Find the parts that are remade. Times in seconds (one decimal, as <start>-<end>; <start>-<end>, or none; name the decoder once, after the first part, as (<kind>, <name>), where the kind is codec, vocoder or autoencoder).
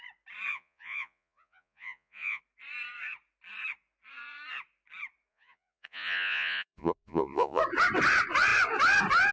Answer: 0.5-2.4 (vocoder, Vocos); 5.3-7.6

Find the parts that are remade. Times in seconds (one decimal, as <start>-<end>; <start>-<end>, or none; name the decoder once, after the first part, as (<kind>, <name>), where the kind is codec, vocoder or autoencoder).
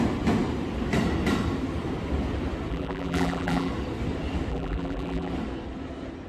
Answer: 2.7-3.7 (vocoder, BigVGAN v2); 4.5-5.3